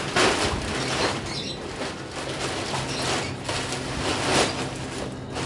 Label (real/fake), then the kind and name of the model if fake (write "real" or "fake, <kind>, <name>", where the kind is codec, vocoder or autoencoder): real